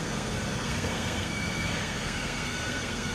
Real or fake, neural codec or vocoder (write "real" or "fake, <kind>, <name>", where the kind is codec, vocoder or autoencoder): fake, codec, SNAC